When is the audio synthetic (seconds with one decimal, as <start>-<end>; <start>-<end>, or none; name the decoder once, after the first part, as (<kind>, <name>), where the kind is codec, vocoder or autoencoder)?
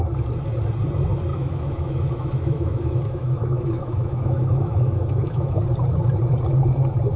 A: 1.3-5.6 (autoencoder, DAC-VAE)